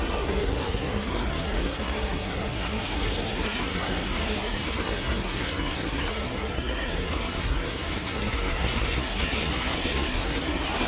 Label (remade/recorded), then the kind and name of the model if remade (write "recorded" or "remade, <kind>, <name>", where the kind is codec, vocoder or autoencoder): remade, codec, SNAC